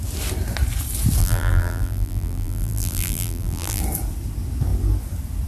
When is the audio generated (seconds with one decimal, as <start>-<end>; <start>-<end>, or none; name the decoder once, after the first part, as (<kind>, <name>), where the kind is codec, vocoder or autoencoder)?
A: 1.2-3.8 (vocoder, BigVGAN v2)